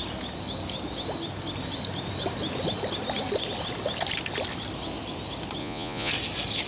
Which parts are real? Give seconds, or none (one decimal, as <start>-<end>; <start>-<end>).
0.0-5.6; 6.1-6.7